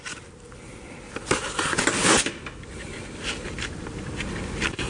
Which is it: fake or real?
real